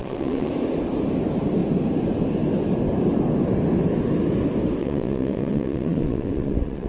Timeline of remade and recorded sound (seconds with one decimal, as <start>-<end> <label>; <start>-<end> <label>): 0.0-0.5 remade; 0.5-4.8 recorded; 4.8-6.9 remade

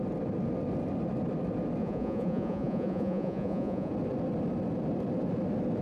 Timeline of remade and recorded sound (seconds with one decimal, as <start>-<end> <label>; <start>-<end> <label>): 0.0-1.8 recorded; 1.8-3.9 remade; 3.9-5.8 recorded

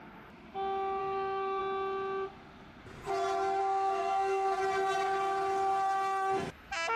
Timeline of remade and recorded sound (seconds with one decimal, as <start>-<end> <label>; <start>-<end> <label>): 0.0-1.0 recorded; 1.0-1.6 remade; 1.6-3.6 recorded; 3.6-4.6 remade; 4.6-7.0 recorded

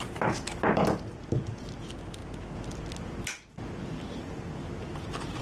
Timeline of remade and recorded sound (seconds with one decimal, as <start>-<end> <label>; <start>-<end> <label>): 0.0-5.4 recorded

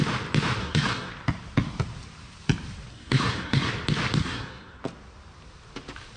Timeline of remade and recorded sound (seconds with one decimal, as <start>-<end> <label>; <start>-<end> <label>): 0.0-0.6 recorded; 0.6-1.1 remade; 1.1-2.9 recorded; 2.9-3.7 remade; 3.7-4.2 recorded; 4.2-4.8 remade; 4.8-6.2 recorded